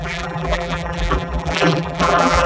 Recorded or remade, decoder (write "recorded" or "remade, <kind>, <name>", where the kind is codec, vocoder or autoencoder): remade, vocoder, BigVGAN v2